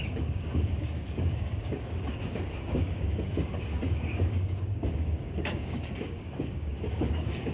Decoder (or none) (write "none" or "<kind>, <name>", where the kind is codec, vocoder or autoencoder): codec, DAC